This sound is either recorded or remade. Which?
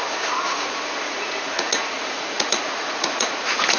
remade